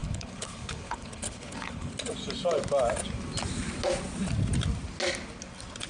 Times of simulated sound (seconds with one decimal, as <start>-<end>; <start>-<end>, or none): 0.0-1.9